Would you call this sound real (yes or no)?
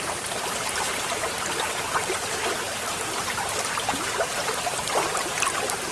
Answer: no